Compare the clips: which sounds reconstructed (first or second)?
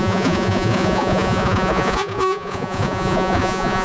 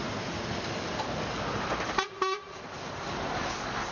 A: first